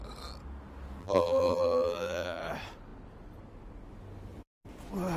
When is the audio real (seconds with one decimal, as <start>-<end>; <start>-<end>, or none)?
0.0-1.0; 2.4-5.2